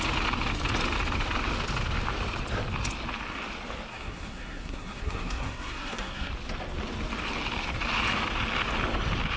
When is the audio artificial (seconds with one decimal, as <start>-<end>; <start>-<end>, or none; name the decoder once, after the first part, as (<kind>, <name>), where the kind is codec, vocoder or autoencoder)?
3.9-6.3 (codec, SNAC)